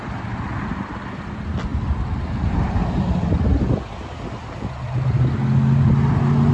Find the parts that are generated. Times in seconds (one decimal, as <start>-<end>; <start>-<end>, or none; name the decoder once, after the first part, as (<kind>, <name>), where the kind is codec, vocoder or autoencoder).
none